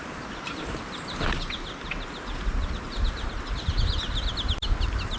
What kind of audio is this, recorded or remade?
recorded